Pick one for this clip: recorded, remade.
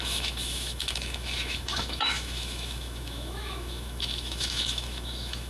remade